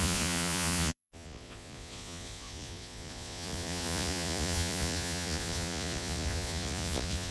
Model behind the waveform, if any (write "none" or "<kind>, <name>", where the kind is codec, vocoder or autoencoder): vocoder, Vocos